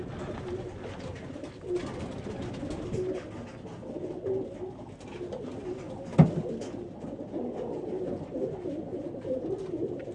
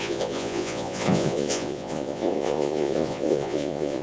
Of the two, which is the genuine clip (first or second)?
first